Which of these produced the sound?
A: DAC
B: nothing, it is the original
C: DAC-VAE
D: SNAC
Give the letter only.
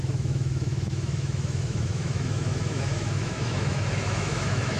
C